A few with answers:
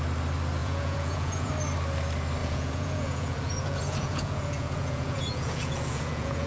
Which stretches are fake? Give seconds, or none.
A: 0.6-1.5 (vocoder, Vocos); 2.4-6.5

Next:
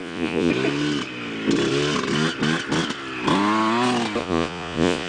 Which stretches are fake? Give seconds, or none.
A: 0.0-0.5 (vocoder, Vocos); 4.2-5.1

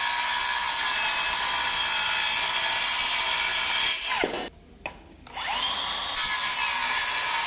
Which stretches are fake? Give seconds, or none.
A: none

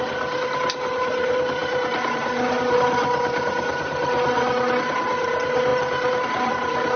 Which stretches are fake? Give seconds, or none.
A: none

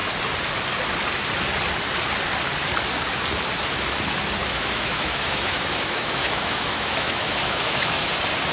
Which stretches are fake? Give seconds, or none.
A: 4.4-8.1 (autoencoder, DAC-VAE)